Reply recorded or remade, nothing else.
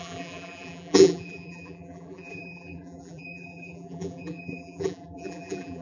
remade